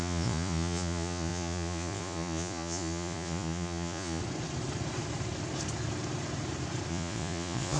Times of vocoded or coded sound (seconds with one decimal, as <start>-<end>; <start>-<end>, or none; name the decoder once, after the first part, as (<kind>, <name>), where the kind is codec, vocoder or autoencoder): 0.0-4.2 (vocoder, Vocos); 6.9-7.8